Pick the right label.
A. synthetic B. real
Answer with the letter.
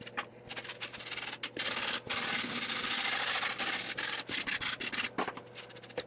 B